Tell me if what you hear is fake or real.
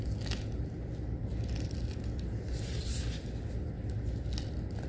real